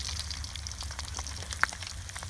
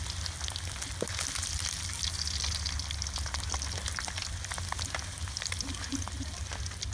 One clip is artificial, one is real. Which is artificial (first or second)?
first